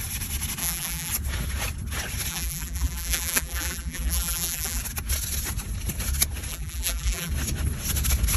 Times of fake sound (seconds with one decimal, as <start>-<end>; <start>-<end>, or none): 0.6-1.1; 2.3-4.8; 6.5-7.3